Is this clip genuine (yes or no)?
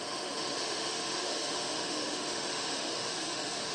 no